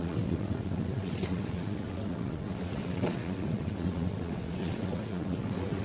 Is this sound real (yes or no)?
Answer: no